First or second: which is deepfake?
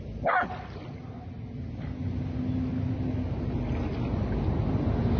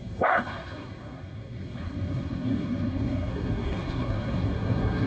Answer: second